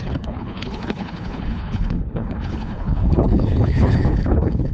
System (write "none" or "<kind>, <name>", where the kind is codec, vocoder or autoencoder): codec, HILCodec